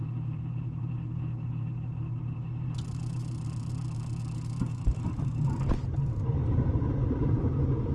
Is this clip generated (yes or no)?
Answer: yes